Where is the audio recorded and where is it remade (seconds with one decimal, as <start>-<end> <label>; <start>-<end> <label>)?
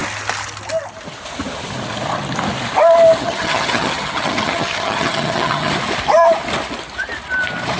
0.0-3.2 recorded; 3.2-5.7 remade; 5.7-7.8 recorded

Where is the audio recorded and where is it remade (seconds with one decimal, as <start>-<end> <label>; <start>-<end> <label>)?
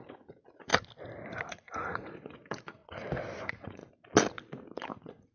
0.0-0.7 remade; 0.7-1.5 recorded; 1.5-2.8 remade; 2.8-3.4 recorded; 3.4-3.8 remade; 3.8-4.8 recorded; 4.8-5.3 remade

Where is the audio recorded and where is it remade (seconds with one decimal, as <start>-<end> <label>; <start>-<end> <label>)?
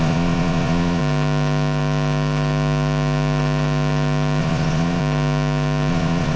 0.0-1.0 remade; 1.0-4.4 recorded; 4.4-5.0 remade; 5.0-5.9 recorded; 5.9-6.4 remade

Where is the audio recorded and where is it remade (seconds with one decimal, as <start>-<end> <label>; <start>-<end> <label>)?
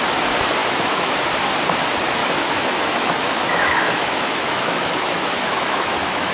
0.0-0.6 recorded; 0.6-1.2 remade; 1.2-2.2 recorded; 2.2-6.3 remade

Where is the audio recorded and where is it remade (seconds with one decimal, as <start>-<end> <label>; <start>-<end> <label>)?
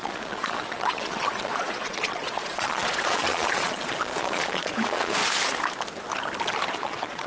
0.0-5.2 remade; 5.2-6.7 recorded; 6.7-7.3 remade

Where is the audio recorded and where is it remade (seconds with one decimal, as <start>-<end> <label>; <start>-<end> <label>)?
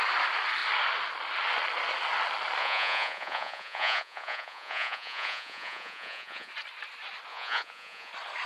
0.0-2.6 recorded; 2.6-6.5 remade; 6.5-7.3 recorded; 7.3-8.1 remade; 8.1-8.5 recorded